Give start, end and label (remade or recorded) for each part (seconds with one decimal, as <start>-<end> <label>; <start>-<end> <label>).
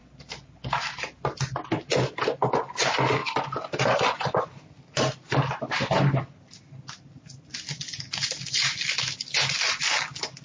0.0-10.4 recorded